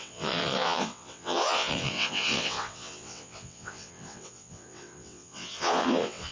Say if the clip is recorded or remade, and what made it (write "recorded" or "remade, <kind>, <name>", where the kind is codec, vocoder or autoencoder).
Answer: remade, vocoder, WaveNeXt